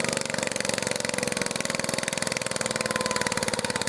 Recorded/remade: recorded